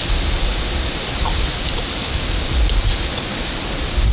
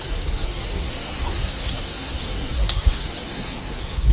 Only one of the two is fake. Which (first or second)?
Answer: second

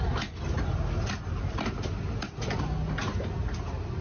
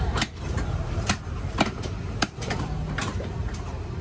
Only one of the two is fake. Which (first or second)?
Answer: second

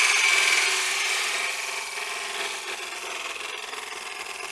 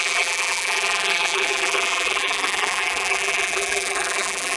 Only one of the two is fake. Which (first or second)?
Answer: second